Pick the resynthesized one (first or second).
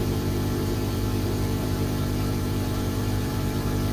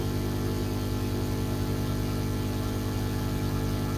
first